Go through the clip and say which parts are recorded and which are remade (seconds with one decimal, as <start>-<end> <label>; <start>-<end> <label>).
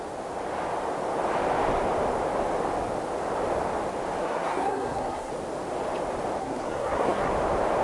0.0-4.2 recorded; 4.2-5.3 remade; 5.3-6.4 recorded; 6.4-7.3 remade; 7.3-7.8 recorded